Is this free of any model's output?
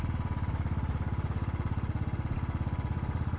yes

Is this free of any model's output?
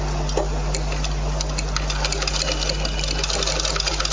yes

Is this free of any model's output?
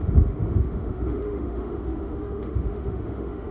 no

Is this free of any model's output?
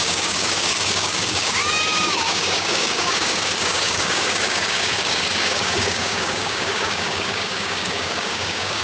no